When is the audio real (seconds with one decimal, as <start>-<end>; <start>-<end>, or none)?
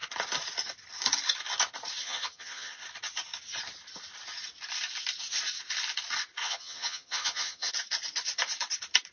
0.0-2.0; 2.8-6.4; 7.7-9.1